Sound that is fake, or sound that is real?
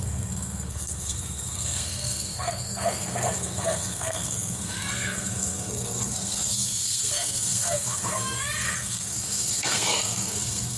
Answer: fake